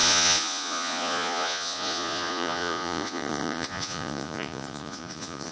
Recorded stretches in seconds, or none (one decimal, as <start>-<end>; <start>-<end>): none